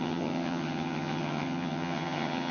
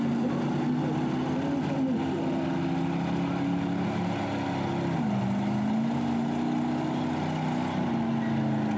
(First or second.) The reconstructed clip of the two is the first